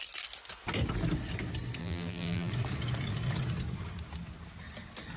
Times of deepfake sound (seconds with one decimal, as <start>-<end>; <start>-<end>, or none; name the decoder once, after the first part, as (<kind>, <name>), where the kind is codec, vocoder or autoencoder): 1.8-2.5 (vocoder, BigVGAN v2)